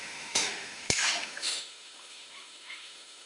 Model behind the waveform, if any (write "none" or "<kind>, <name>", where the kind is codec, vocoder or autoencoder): autoencoder, DAC-VAE